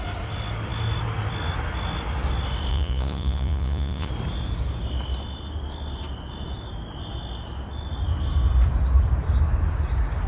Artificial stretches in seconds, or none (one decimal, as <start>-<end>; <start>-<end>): 2.7-4.1